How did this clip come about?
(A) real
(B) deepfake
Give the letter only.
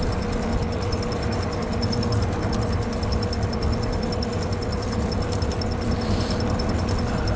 A